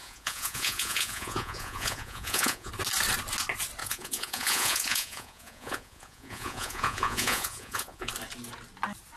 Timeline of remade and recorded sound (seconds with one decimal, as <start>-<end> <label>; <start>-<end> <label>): 0.0-2.7 remade; 2.7-3.8 recorded; 3.8-8.1 remade; 8.1-9.2 recorded